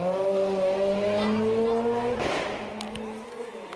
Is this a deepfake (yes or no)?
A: no